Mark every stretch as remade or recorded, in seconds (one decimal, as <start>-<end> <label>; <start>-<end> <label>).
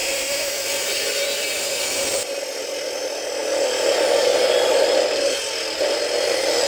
0.0-0.5 remade; 0.5-6.7 recorded